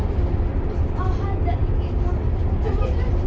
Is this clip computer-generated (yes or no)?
no